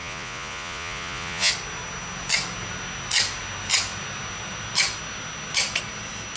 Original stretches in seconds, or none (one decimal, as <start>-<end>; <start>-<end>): 1.5-6.4